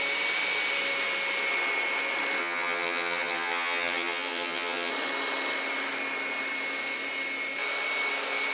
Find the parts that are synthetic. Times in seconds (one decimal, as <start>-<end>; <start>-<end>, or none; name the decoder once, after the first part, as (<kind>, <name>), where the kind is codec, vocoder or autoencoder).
2.4-4.9 (vocoder, HiFi-GAN)